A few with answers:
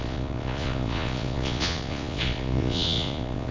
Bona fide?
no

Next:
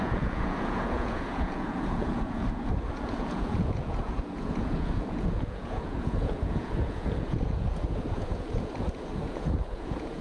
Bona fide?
no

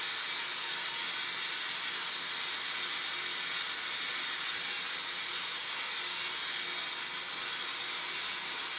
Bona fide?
yes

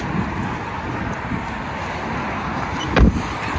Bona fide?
yes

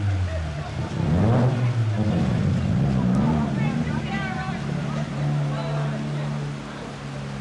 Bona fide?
yes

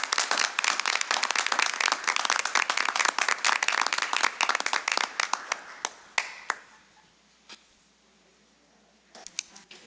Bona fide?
yes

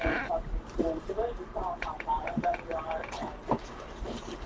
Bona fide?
no